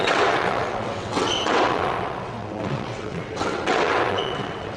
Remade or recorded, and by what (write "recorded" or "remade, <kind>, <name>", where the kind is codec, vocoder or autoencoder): remade, vocoder, WaveNeXt